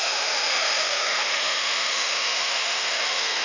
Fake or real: fake